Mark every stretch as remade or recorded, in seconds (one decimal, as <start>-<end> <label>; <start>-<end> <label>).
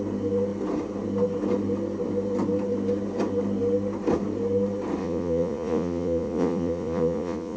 0.0-5.0 recorded; 5.0-7.6 remade